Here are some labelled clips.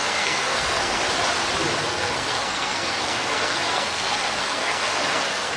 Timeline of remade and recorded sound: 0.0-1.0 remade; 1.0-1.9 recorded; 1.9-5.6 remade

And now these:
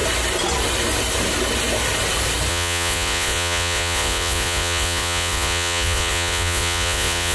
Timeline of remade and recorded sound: 0.0-2.5 recorded; 2.5-7.3 remade

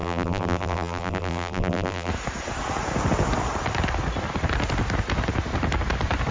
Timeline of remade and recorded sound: 0.0-2.1 remade; 2.1-6.3 recorded

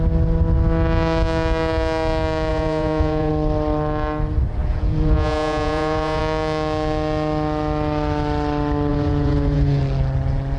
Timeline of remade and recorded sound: 0.0-2.5 recorded; 2.5-3.3 remade; 3.3-4.6 recorded; 4.6-6.2 remade; 6.2-8.9 recorded; 8.9-9.8 remade; 9.8-10.6 recorded

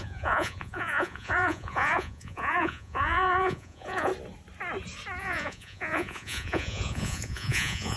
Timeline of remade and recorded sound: 0.0-4.1 remade; 4.1-5.2 recorded; 5.2-8.0 remade

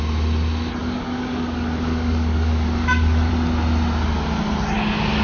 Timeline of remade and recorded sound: 0.0-0.8 recorded; 0.8-3.3 remade; 3.3-5.2 recorded

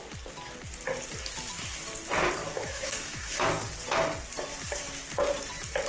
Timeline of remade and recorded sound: 0.0-2.4 recorded; 2.4-3.5 remade; 3.5-5.9 recorded